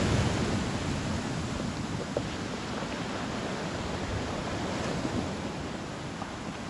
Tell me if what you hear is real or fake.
real